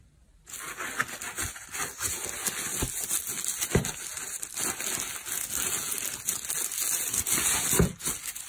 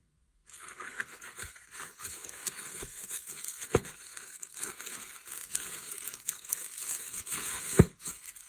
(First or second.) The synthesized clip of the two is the second